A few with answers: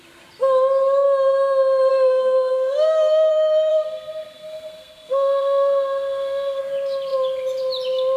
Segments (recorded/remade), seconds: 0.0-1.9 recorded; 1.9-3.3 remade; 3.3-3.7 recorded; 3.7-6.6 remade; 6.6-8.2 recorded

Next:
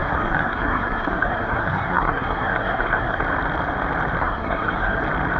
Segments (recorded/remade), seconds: 0.0-3.2 remade; 3.2-4.2 recorded; 4.2-5.0 remade; 5.0-5.4 recorded

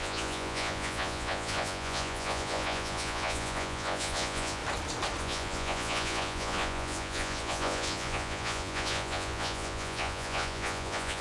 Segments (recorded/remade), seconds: 0.0-4.6 remade; 4.6-5.2 recorded; 5.2-11.2 remade